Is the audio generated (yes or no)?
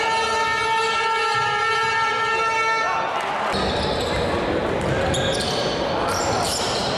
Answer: no